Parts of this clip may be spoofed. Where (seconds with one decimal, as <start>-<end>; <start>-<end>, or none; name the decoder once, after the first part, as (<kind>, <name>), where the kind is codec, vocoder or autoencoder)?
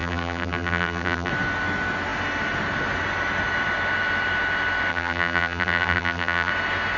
0.0-1.3 (vocoder, BigVGAN v2); 4.9-6.5